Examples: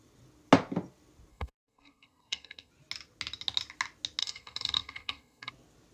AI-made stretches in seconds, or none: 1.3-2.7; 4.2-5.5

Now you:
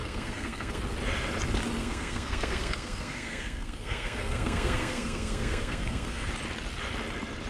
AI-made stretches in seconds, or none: 0.0-0.8; 1.8-6.3

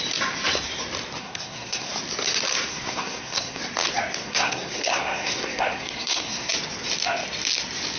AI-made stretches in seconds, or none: 1.2-1.9; 2.7-3.6; 4.2-6.5

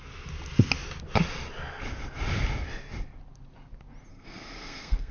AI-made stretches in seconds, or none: 4.1-5.1

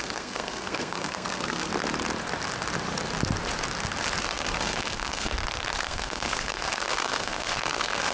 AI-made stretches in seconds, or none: 0.0-1.7; 4.2-5.3; 5.8-8.1